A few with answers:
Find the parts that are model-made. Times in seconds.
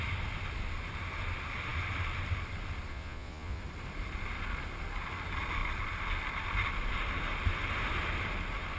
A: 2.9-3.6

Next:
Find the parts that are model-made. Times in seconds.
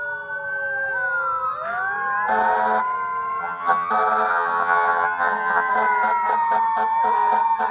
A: 3.4-3.9; 4.3-5.7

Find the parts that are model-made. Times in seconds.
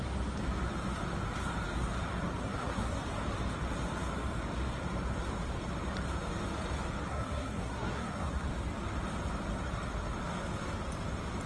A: 2.4-3.0; 7.1-8.5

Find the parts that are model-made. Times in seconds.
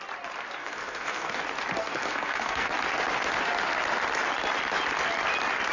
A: 0.6-1.4; 1.8-2.7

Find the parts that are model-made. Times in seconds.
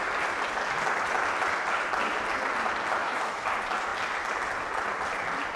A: 3.0-3.5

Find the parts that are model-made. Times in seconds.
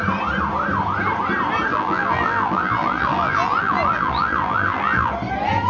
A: 1.7-5.1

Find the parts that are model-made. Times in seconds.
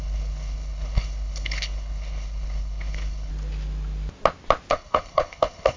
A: 0.0-3.3; 4.7-5.8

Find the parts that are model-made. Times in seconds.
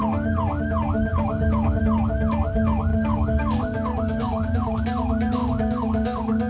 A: 1.1-1.8; 2.9-4.8; 5.4-6.5